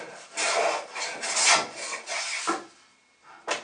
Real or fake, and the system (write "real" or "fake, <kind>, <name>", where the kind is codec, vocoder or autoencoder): real